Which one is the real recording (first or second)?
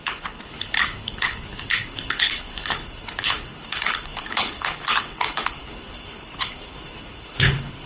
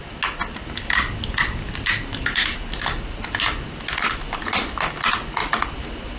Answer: second